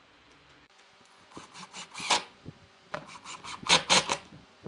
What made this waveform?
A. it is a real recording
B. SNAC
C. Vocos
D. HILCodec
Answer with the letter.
C